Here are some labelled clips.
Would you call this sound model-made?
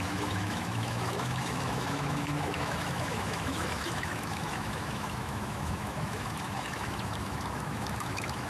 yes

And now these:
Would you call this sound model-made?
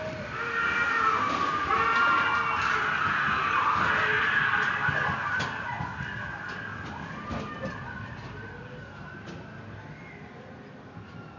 no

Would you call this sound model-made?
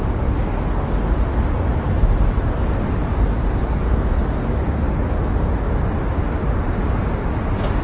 no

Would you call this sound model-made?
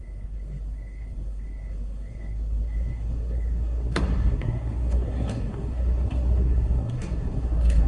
yes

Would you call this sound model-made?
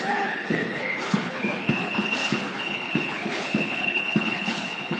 yes